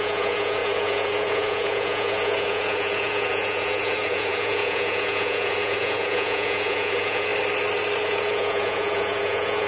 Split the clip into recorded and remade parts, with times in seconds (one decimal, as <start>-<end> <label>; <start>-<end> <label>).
0.0-7.3 remade; 7.3-8.0 recorded; 8.0-9.7 remade